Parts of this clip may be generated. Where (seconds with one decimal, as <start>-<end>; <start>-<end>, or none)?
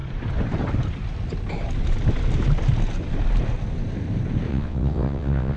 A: 4.5-5.6